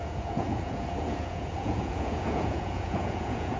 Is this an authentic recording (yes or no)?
no